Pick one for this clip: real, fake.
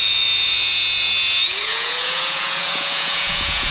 fake